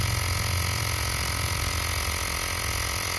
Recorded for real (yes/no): yes